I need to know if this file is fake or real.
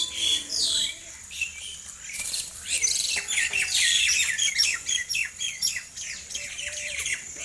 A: fake